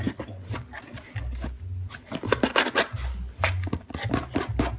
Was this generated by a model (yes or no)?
no